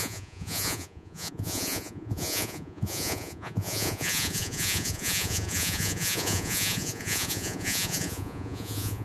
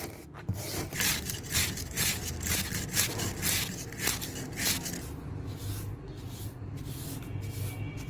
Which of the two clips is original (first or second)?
second